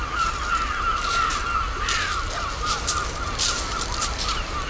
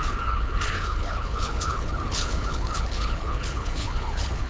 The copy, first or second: second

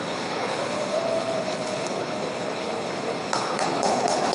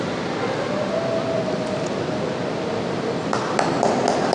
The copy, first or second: first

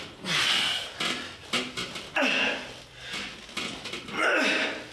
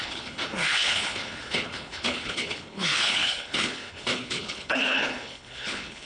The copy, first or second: second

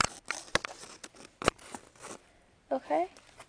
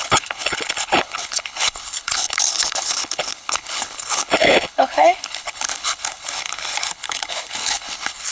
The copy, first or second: second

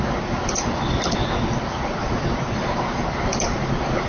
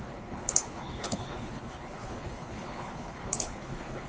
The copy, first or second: second